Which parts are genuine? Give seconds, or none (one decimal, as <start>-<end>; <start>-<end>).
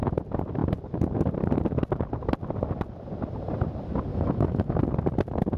0.0-4.1; 4.8-5.6